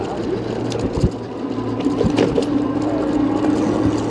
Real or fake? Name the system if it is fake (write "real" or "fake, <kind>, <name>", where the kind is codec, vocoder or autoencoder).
real